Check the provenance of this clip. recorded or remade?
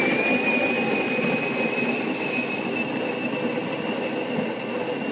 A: recorded